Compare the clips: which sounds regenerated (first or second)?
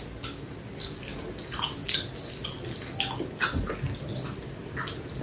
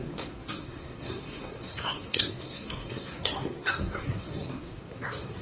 second